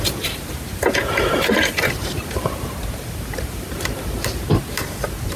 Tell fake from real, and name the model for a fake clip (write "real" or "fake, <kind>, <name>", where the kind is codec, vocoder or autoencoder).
fake, vocoder, BigVGAN v2